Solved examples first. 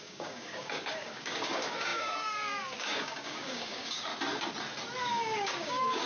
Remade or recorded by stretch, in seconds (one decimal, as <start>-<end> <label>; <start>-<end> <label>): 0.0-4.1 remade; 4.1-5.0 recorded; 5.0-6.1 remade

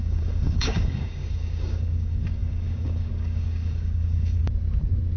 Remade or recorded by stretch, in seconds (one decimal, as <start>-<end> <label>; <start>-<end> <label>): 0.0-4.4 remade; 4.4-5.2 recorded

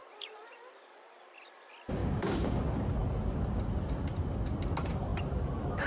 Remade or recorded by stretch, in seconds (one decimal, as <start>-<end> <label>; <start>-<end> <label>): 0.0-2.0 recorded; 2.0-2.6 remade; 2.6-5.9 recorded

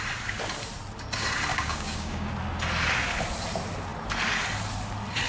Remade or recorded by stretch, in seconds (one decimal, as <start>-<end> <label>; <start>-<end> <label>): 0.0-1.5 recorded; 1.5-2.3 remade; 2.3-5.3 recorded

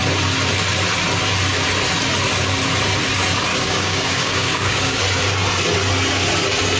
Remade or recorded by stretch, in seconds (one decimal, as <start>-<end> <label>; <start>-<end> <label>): 0.0-3.5 recorded; 3.5-5.0 remade; 5.0-6.8 recorded

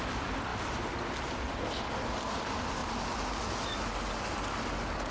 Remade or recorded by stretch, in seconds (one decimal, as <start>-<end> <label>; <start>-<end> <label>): 0.0-5.1 recorded

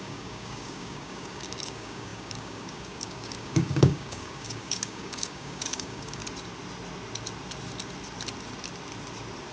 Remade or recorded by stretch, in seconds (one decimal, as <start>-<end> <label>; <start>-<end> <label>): 0.0-6.2 remade; 6.2-9.5 recorded

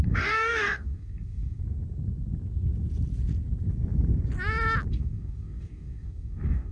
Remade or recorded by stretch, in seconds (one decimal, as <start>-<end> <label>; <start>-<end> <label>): 0.0-1.6 remade; 1.6-4.9 recorded; 4.9-6.7 remade